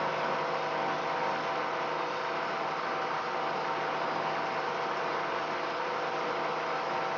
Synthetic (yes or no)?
no